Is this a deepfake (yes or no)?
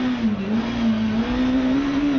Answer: no